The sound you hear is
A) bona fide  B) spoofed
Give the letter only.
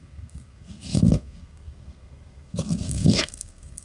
B